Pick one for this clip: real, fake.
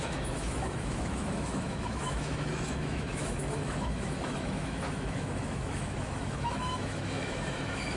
fake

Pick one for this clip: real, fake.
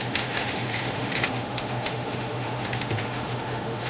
fake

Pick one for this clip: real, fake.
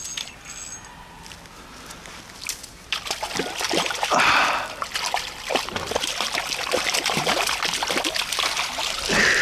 real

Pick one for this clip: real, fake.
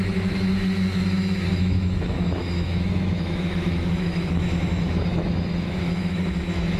fake